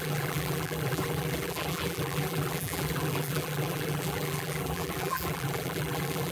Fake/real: fake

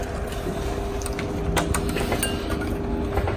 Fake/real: real